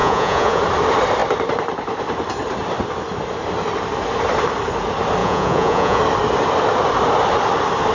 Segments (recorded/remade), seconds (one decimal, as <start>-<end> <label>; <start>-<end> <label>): 0.0-0.6 remade; 0.6-5.2 recorded; 5.2-6.0 remade; 6.0-7.9 recorded